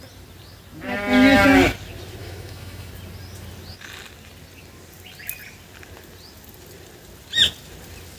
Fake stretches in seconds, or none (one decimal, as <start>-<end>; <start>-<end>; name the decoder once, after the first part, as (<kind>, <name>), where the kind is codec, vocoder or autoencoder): 2.2-2.9 (autoencoder, DAC-VAE)